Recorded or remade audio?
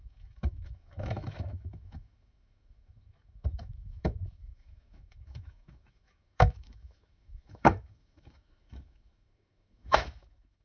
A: remade